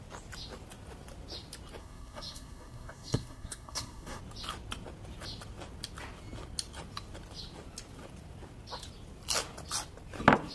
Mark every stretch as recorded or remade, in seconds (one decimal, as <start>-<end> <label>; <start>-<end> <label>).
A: 0.0-1.8 recorded; 1.8-4.2 remade; 4.2-10.5 recorded